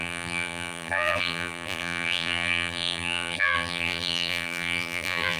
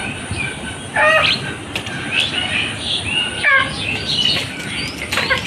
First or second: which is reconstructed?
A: first